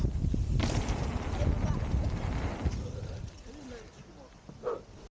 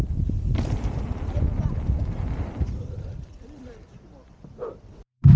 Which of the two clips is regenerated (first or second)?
second